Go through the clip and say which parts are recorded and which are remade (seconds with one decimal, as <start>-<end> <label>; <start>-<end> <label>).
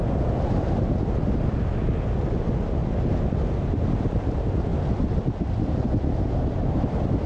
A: 0.0-7.3 recorded